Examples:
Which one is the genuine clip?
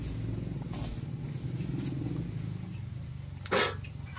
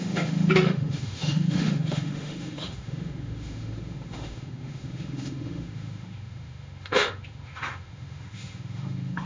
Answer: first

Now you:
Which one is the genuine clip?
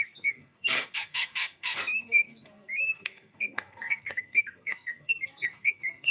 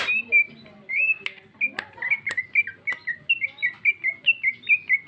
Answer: second